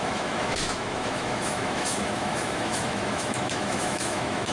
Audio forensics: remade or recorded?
remade